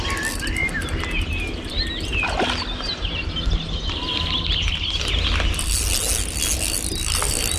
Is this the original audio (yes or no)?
yes